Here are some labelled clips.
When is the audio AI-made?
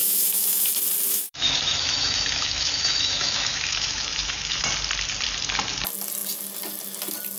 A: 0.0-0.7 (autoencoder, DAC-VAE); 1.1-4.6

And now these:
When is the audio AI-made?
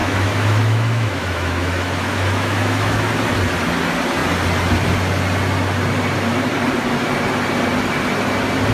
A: 0.0-3.1 (autoencoder, DAC-VAE)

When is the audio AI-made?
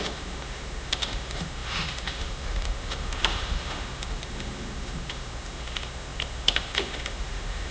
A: 0.0-7.7 (autoencoder, DAC-VAE)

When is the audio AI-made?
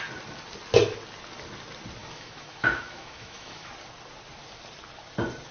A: 2.0-3.7 (autoencoder, DAC-VAE)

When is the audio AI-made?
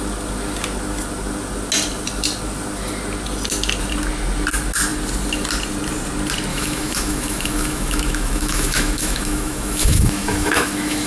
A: 6.5-11.1 (autoencoder, DAC-VAE)